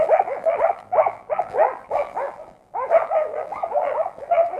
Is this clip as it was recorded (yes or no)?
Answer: no